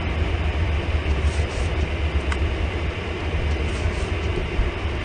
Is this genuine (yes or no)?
yes